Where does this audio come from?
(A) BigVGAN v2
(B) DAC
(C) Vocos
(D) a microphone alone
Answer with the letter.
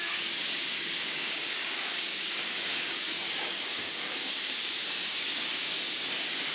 B